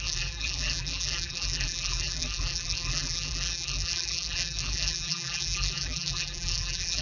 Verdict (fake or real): fake